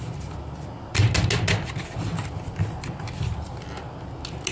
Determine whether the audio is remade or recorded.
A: recorded